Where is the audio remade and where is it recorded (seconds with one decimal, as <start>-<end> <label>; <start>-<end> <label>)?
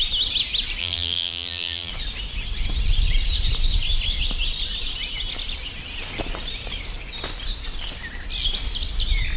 0.0-0.8 recorded; 0.8-1.9 remade; 1.9-9.4 recorded